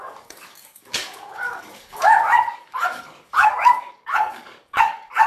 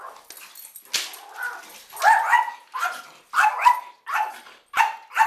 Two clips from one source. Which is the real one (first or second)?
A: second